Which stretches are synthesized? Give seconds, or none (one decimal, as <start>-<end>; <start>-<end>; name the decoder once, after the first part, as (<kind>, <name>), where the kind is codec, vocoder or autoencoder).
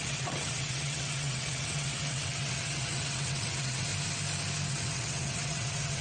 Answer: 0.0-3.9 (vocoder, WaveNeXt); 4.7-6.0